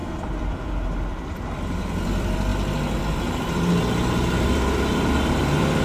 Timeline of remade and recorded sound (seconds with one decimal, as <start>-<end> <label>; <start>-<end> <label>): 0.0-2.5 remade; 2.5-3.0 recorded; 3.0-5.8 remade